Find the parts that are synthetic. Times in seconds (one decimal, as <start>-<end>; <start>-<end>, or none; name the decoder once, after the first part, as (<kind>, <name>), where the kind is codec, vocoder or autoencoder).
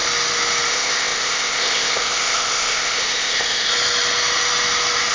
0.7-3.7 (codec, ZipCodec)